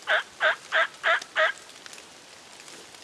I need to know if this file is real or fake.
real